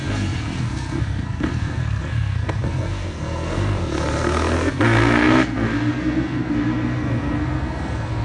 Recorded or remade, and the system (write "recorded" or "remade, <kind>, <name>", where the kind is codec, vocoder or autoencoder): remade, codec, SNAC